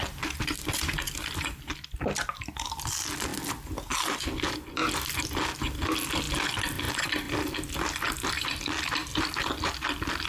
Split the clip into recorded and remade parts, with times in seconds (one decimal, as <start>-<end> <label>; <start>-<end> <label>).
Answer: 0.0-3.3 remade; 3.3-4.2 recorded; 4.2-4.8 remade; 4.8-8.1 recorded; 8.1-9.1 remade; 9.1-9.8 recorded; 9.8-10.3 remade